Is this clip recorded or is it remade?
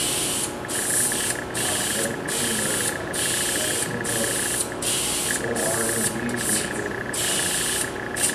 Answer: recorded